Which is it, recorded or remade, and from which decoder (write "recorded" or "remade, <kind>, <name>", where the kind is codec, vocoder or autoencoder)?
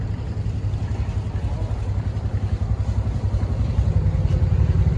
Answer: recorded